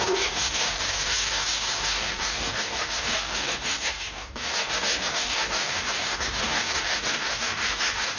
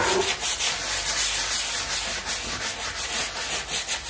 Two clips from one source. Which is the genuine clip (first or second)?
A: second